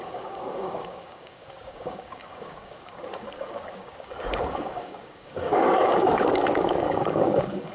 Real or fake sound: fake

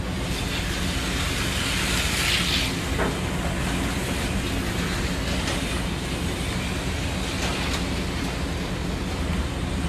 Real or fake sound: real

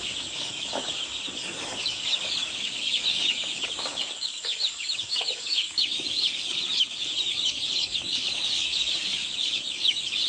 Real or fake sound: fake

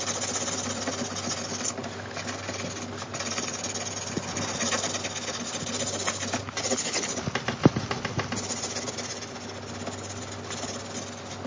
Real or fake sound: real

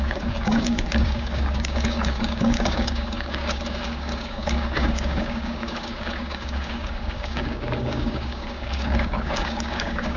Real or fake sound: fake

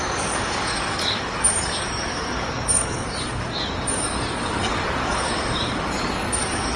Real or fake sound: fake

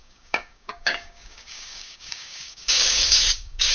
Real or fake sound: fake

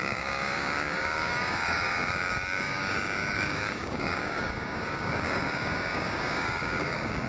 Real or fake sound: fake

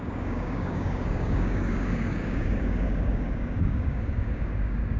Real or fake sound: fake